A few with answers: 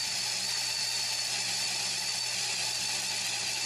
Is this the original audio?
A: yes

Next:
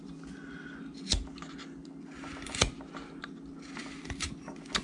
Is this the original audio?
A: yes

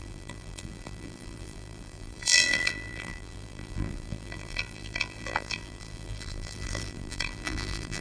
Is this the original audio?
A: no